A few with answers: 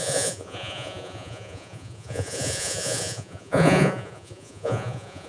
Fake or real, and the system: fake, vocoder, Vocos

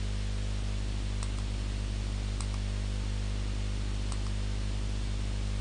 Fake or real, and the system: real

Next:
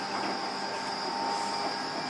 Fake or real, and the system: real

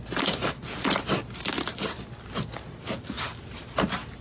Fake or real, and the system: real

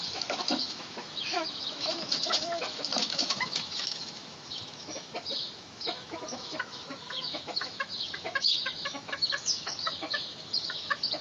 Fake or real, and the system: fake, autoencoder, DAC-VAE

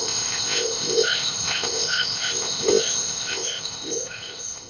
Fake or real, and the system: fake, codec, ZipCodec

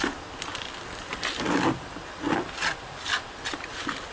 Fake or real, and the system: real